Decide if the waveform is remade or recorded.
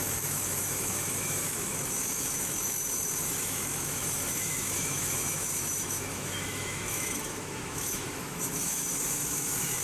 remade